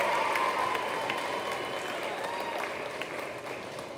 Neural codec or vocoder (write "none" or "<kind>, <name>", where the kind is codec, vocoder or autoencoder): none